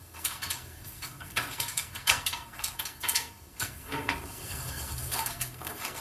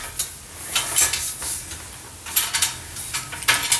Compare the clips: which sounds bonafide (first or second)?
second